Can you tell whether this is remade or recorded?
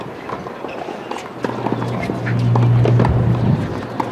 recorded